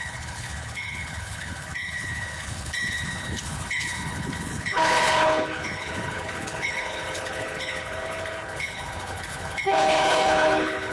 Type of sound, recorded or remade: remade